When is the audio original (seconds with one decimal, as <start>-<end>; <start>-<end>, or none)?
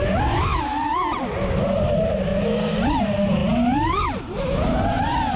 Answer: 0.5-1.6; 2.3-3.0